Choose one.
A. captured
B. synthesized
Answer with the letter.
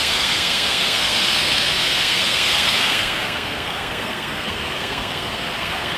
B